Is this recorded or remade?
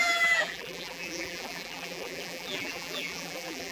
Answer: remade